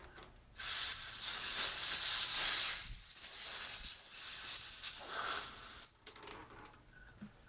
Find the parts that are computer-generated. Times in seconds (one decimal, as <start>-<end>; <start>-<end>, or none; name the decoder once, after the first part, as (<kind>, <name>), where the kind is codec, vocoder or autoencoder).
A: none